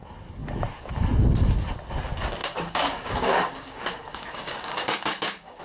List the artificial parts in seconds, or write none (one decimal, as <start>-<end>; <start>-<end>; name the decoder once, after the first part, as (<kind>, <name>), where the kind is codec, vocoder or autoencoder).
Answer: 2.4-5.6 (codec, DAC)